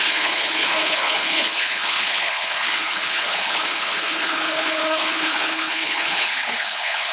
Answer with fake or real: fake